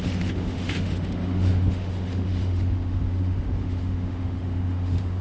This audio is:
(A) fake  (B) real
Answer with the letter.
A